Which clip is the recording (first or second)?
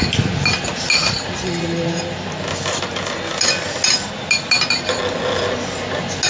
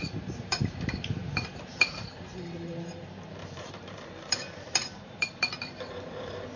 first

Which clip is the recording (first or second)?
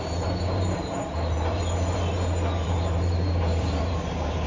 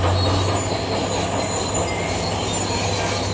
second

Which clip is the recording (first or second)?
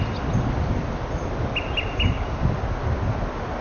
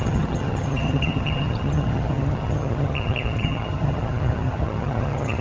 first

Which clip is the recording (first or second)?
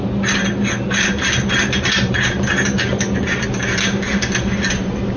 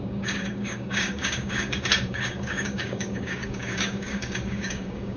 first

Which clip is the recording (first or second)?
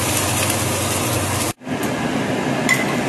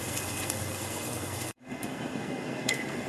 first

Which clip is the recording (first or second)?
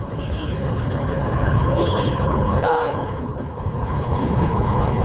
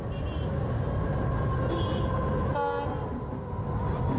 second